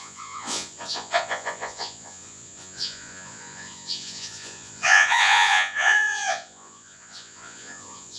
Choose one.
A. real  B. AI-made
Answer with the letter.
B